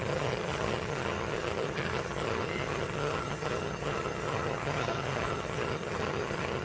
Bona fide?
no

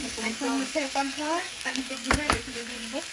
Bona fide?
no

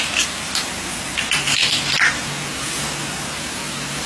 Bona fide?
yes